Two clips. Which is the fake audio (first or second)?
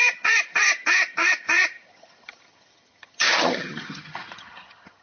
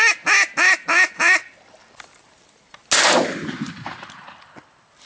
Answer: first